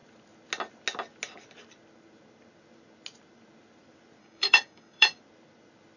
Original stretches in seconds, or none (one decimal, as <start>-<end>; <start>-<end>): 0.0-4.2; 5.2-6.0